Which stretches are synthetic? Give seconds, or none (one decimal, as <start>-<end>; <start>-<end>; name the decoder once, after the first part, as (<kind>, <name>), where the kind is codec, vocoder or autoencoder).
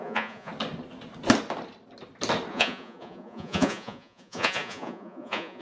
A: 0.0-0.5 (vocoder, Vocos); 2.5-5.6